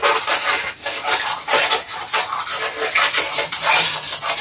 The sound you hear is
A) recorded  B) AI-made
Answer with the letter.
A